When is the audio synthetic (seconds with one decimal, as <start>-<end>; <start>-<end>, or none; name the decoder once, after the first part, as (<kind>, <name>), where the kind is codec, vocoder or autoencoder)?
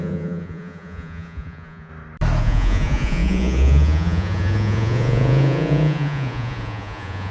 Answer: 0.0-1.9 (vocoder, Vocos); 2.4-7.3